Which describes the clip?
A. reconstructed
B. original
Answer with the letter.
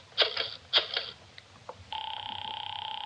B